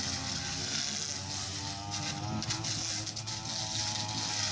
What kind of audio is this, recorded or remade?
recorded